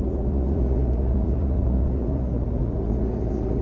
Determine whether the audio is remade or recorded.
remade